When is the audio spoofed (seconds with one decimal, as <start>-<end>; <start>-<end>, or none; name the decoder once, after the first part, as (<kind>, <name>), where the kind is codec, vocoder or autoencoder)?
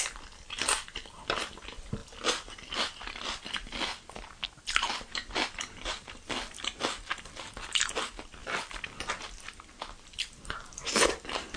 none